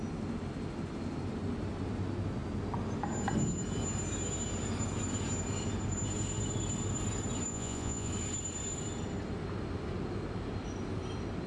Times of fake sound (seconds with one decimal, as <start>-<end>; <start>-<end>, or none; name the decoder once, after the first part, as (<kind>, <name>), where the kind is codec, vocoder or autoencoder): 7.5-8.1 (vocoder, Vocos)